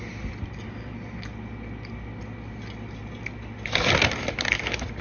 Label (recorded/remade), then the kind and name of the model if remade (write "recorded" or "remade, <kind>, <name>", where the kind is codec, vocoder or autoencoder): recorded